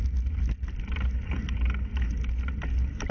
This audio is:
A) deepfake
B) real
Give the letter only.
B